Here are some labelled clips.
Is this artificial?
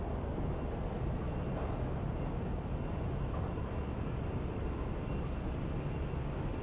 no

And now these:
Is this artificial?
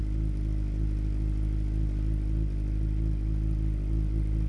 no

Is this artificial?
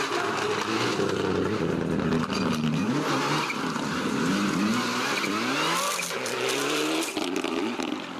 no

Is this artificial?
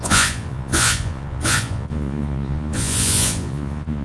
yes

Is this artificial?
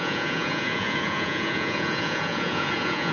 yes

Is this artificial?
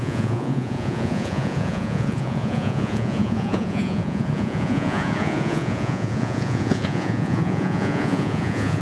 yes